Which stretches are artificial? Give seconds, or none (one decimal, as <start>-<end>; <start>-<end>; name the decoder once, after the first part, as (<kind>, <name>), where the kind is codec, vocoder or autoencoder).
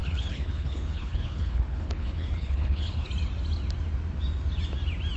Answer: 0.0-3.1 (codec, HILCodec)